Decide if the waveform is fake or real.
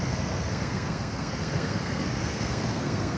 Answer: fake